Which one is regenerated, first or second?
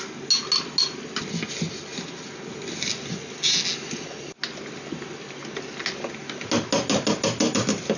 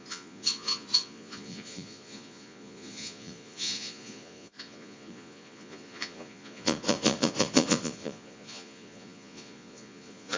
second